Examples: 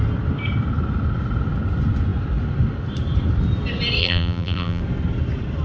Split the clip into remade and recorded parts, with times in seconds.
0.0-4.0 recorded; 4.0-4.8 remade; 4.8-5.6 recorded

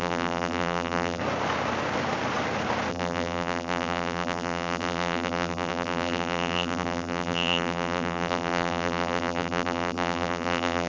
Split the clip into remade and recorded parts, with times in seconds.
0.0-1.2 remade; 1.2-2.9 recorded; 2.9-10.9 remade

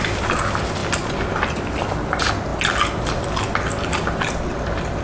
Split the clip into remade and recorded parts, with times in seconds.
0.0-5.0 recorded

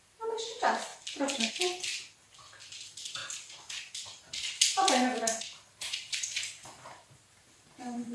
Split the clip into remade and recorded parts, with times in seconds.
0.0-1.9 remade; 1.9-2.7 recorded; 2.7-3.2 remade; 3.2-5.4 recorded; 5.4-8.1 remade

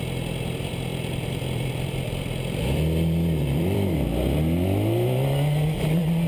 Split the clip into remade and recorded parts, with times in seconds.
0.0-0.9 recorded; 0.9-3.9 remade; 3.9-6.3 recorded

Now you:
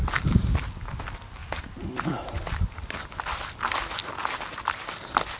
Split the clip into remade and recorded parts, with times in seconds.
0.0-1.4 recorded; 1.4-3.1 remade; 3.1-5.4 recorded

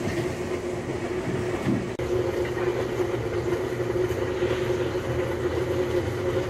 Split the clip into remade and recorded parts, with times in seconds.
0.0-6.5 recorded

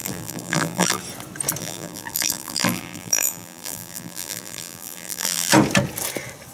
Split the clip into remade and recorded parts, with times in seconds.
0.0-1.0 remade; 1.0-1.6 recorded; 1.6-5.5 remade; 5.5-6.5 recorded